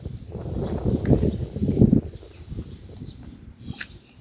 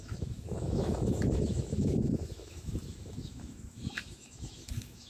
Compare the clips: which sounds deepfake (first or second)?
second